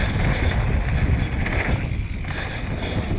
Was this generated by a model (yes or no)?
no